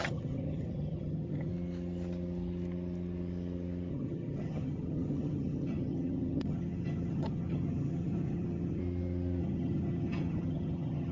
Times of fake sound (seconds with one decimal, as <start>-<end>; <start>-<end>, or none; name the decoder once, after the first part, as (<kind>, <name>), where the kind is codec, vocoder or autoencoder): 0.0-1.5 (vocoder, HiFi-GAN); 3.9-8.8; 9.4-11.1